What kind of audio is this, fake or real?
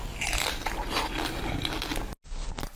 real